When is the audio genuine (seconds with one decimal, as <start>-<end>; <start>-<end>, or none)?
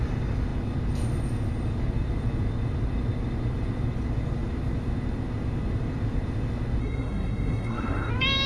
0.0-6.8; 8.1-8.5